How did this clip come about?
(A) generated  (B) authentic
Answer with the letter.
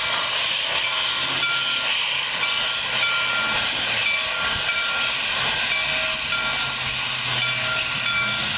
B